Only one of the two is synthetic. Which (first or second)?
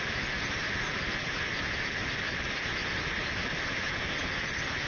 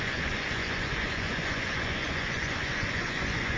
second